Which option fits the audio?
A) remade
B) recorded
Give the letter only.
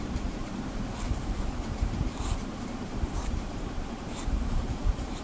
A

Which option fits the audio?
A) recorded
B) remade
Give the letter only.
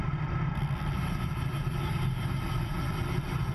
B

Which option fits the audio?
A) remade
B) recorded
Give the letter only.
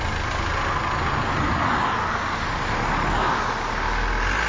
B